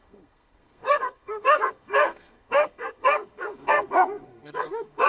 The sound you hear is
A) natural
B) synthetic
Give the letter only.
B